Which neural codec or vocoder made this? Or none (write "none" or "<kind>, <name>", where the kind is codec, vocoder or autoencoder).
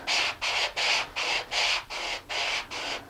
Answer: none